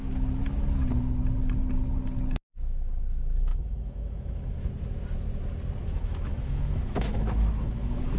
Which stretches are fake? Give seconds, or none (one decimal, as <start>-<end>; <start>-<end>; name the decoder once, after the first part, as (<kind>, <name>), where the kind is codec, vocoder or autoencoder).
3.5-4.7 (autoencoder, DAC-VAE); 5.8-8.2